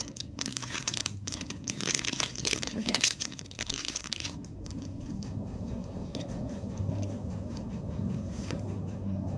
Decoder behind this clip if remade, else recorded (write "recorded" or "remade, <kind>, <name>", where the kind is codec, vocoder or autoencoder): remade, codec, SNAC